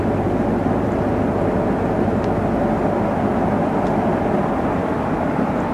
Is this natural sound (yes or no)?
yes